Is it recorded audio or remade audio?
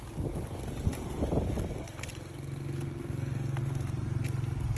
recorded